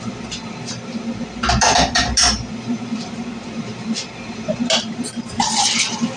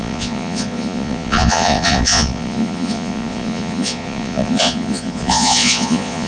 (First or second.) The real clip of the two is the first